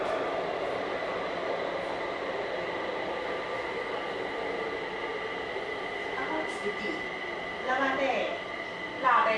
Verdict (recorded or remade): recorded